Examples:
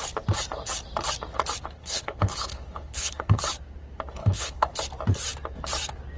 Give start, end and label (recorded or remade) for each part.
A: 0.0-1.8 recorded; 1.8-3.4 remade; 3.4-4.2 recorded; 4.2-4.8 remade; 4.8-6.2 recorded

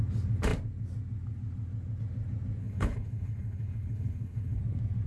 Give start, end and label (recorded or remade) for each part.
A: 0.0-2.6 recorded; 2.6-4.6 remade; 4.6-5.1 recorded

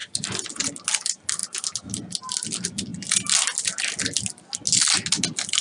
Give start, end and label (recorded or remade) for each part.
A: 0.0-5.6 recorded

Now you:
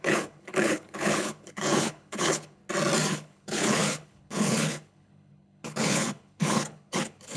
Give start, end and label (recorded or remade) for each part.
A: 0.0-2.6 remade; 2.6-3.1 recorded; 3.1-7.4 remade

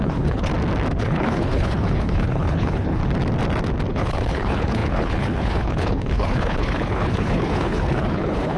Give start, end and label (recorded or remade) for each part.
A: 0.0-0.5 remade; 0.5-1.0 recorded; 1.0-3.0 remade; 3.0-3.9 recorded; 3.9-8.6 remade

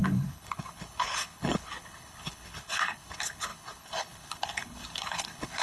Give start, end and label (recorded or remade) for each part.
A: 0.0-5.6 remade

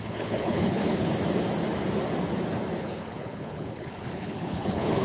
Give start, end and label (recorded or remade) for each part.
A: 0.0-1.1 remade; 1.1-2.8 recorded; 2.8-5.0 remade

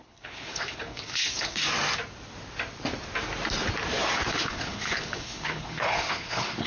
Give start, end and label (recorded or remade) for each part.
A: 0.0-1.6 remade; 1.6-4.3 recorded; 4.3-6.7 remade